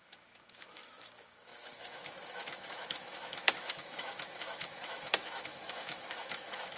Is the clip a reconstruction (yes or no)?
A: yes